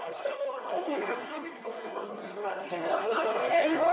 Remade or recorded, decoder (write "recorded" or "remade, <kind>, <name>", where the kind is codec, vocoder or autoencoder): remade, codec, SNAC